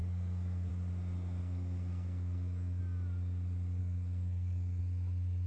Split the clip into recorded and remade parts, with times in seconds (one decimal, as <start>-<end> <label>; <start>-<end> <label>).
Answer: 0.0-0.7 remade; 0.7-1.4 recorded; 1.4-2.8 remade; 2.8-3.8 recorded; 3.8-4.8 remade; 4.8-5.5 recorded